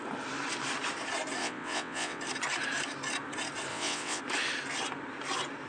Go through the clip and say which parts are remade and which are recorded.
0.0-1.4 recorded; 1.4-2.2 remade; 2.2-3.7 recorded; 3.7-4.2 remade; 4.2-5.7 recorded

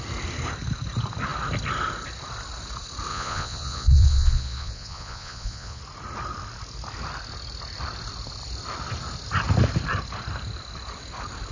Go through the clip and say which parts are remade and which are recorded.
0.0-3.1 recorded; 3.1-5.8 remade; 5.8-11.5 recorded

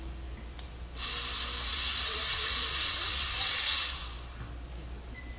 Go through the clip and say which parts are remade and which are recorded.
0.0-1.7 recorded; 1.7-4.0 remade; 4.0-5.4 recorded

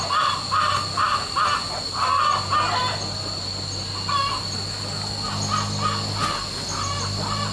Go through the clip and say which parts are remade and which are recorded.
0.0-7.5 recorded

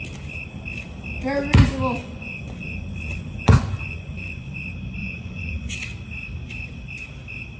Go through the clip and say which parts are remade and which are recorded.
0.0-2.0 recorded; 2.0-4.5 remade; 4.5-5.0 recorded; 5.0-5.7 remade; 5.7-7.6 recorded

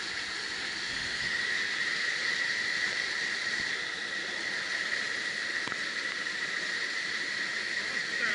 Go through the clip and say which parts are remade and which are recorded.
0.0-0.9 recorded; 0.9-1.6 remade; 1.6-8.3 recorded

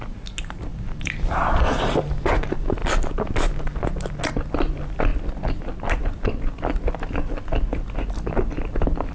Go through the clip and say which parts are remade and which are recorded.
0.0-0.7 recorded; 0.7-2.0 remade; 2.0-9.1 recorded